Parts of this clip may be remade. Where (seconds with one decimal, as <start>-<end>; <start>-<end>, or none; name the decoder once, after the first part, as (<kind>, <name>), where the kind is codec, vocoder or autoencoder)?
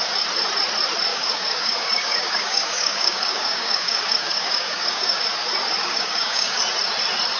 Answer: 1.1-5.2 (codec, DAC); 5.8-6.6